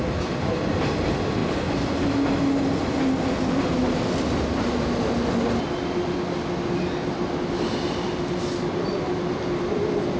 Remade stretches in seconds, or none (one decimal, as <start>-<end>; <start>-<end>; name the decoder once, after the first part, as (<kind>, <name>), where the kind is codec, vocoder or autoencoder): none